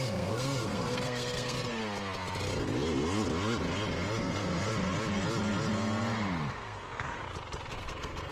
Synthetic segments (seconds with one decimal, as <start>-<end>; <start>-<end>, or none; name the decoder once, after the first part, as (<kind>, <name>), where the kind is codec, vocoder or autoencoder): 0.0-1.8 (codec, SNAC); 4.2-4.7; 6.5-7.2; 7.7-8.3